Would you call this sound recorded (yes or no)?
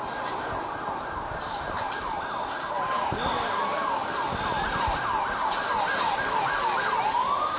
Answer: yes